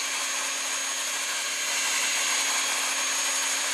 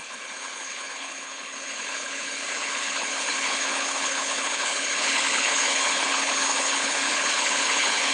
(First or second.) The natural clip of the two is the first